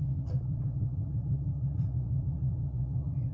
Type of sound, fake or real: fake